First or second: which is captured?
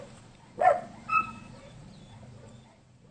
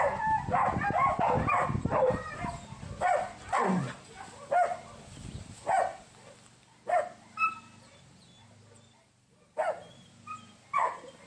second